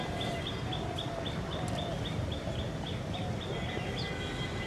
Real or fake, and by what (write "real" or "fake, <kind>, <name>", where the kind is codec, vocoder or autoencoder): real